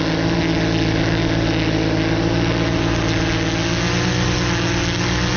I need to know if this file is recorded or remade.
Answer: recorded